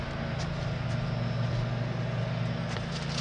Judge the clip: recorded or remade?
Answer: recorded